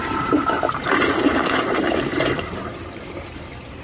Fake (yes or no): yes